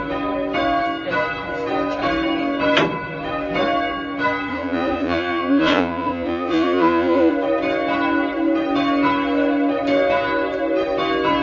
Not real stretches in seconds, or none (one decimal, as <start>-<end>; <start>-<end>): 4.5-7.3